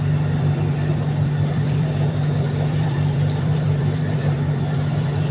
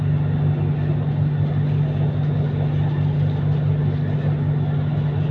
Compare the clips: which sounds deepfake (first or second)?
first